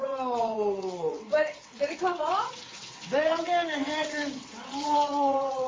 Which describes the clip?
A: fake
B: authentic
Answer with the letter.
A